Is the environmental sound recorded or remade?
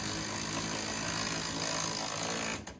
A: recorded